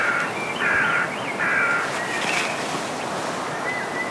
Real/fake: real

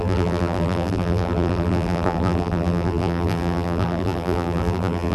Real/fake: fake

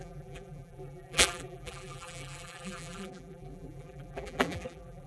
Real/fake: fake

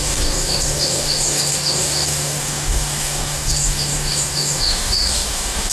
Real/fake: fake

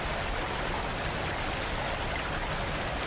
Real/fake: real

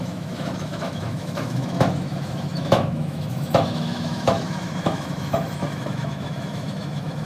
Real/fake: fake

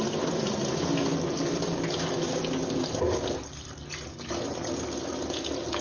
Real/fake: real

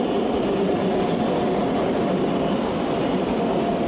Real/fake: real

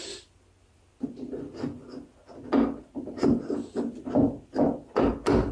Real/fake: real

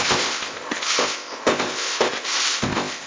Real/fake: fake